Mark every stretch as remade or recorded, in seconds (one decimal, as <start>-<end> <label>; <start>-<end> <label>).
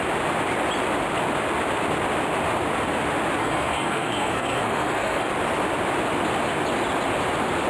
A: 0.0-3.4 recorded; 3.4-5.3 remade; 5.3-7.7 recorded